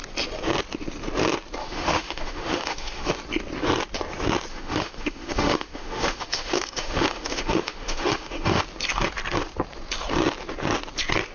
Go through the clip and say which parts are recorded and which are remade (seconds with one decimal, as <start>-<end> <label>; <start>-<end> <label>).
0.0-1.6 recorded; 1.6-3.1 remade; 3.1-4.5 recorded; 4.5-8.6 remade; 8.6-11.3 recorded